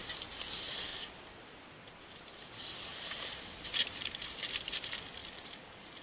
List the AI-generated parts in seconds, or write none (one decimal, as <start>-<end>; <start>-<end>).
2.9-4.5; 5.2-6.0